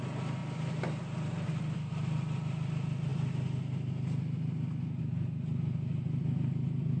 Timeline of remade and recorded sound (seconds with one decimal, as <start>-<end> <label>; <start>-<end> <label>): 0.0-7.0 recorded